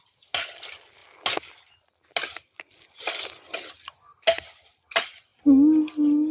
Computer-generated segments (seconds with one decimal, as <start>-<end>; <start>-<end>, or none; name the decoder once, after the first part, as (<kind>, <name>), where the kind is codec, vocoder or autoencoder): none